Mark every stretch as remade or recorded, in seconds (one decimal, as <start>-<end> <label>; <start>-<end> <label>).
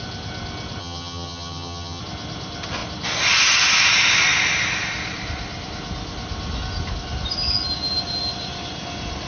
0.0-0.8 recorded; 0.8-2.0 remade; 2.0-9.3 recorded